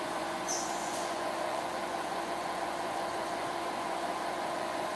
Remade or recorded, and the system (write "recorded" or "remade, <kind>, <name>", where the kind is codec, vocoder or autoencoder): remade, vocoder, Vocos